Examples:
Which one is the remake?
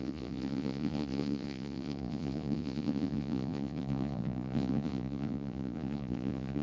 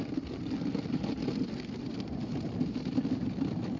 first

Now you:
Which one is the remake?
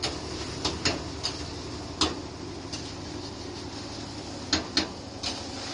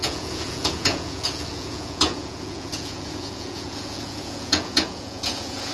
second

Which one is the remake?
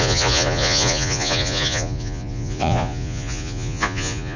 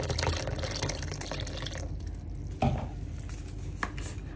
first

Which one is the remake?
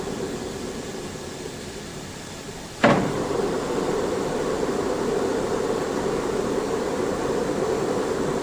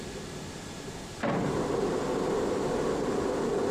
first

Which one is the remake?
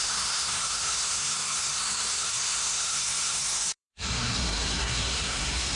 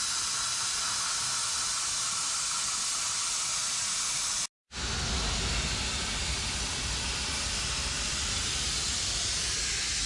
first